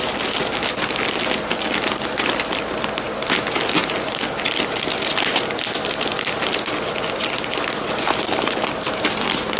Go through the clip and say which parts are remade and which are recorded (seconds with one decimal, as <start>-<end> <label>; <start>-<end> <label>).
0.0-9.6 recorded